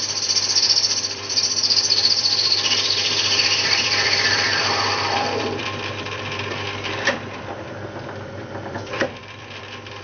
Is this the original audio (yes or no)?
no